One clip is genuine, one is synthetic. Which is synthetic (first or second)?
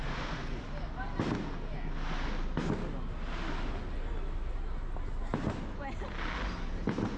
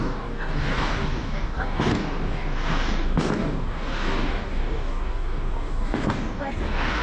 second